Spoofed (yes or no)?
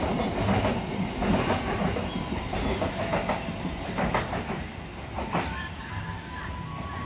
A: no